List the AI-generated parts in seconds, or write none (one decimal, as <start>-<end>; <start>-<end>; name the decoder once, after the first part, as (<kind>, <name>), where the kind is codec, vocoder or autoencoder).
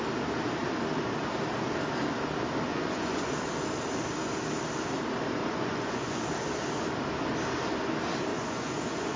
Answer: 2.7-3.3 (vocoder, Vocos); 5.4-6.2; 8.3-9.2